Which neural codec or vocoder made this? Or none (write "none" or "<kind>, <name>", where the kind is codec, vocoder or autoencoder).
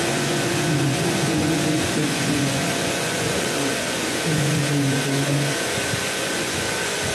vocoder, Vocos